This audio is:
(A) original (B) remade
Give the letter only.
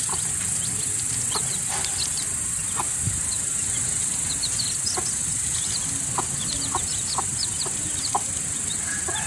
A